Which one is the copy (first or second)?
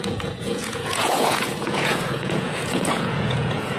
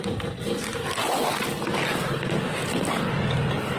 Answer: first